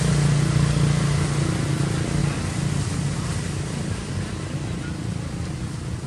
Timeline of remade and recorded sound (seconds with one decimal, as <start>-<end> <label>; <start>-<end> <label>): 0.0-6.1 recorded